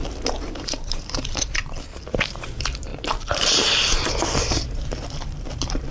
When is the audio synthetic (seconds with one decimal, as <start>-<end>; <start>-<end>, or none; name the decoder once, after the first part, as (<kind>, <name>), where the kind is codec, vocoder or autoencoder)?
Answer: 0.0-1.6 (vocoder, BigVGAN v2); 2.1-5.9